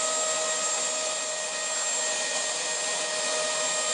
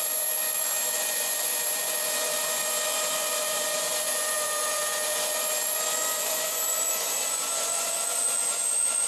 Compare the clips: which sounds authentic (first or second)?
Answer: first